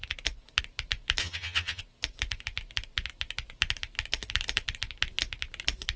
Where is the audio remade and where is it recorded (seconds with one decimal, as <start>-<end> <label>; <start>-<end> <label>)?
0.0-1.2 recorded; 1.2-1.8 remade; 1.8-6.0 recorded